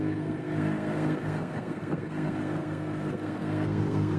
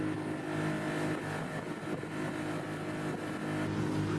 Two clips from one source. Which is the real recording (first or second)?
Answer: second